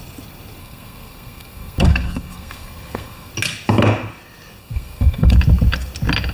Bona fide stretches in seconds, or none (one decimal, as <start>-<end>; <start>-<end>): 0.0-0.6; 3.3-4.6; 5.3-6.3